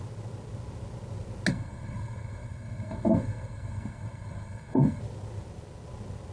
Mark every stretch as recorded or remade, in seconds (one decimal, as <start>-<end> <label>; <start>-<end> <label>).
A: 0.0-1.5 recorded; 1.5-5.0 remade; 5.0-6.3 recorded